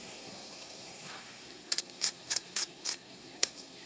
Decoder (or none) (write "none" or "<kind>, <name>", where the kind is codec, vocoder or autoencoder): codec, SNAC